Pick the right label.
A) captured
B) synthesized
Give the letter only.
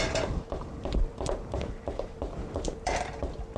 B